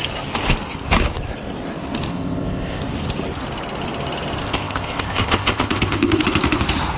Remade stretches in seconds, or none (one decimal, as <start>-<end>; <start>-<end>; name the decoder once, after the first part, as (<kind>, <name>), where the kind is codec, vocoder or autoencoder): 2.1-2.8 (codec, ZipCodec); 4.4-6.2